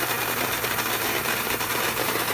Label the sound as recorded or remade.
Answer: remade